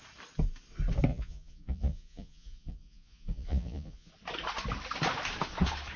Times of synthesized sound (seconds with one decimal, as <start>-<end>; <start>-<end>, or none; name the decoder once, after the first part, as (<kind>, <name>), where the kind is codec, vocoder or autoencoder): 1.1-4.1 (vocoder, Vocos)